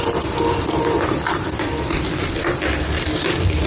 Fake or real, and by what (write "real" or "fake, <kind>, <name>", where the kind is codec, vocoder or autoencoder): fake, vocoder, BigVGAN v2